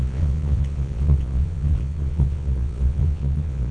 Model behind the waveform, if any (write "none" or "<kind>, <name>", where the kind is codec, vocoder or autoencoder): vocoder, Vocos